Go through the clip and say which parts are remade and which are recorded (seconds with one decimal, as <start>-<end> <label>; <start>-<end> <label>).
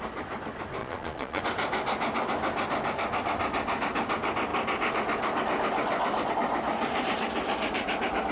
0.0-0.8 recorded; 0.8-1.4 remade; 1.4-8.3 recorded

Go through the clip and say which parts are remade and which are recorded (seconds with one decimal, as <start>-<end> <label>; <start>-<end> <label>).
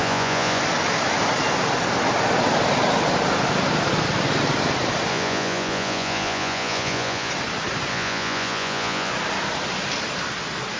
0.0-0.6 remade; 0.6-5.1 recorded; 5.1-7.3 remade; 7.3-7.9 recorded; 7.9-9.1 remade; 9.1-10.8 recorded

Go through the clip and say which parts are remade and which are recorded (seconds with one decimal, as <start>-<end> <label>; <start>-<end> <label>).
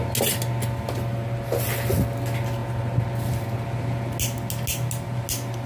0.0-5.7 recorded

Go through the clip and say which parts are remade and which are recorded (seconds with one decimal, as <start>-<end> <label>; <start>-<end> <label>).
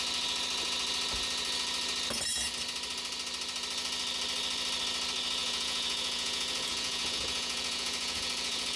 0.0-5.4 recorded; 5.4-8.8 remade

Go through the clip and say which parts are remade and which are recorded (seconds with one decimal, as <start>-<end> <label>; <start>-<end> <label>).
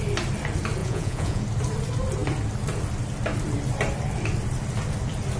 0.0-0.8 recorded; 0.8-1.4 remade; 1.4-5.4 recorded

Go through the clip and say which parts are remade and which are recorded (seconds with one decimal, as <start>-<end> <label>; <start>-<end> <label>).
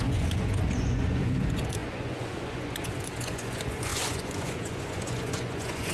0.0-5.9 remade